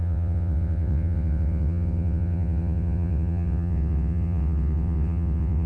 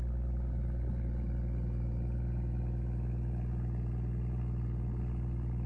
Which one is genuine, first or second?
second